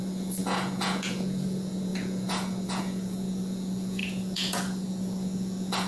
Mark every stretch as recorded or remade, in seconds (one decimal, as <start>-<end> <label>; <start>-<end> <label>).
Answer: 0.0-5.9 remade